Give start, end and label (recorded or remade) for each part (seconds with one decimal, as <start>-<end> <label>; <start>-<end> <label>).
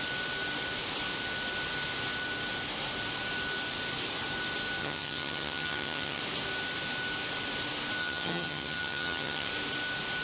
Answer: 0.0-4.8 recorded; 4.8-6.2 remade; 6.2-8.0 recorded; 8.0-9.5 remade; 9.5-10.2 recorded